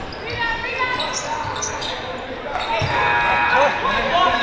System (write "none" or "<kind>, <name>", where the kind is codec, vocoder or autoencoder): none